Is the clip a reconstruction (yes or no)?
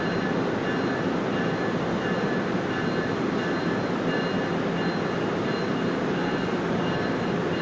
no